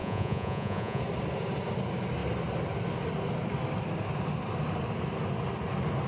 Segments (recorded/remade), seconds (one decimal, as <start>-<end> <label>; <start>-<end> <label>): 0.0-1.0 remade; 1.0-6.1 recorded